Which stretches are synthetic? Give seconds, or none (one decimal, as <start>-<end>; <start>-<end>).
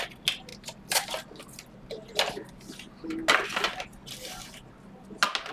none